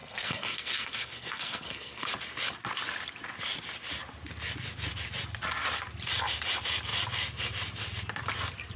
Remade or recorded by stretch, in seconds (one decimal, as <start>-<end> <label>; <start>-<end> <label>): 0.0-2.1 remade; 2.1-8.8 recorded